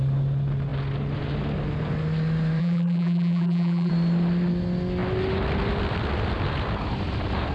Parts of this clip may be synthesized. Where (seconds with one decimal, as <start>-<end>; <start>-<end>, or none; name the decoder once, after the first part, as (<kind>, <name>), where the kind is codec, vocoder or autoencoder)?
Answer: 2.6-3.9 (vocoder, BigVGAN v2)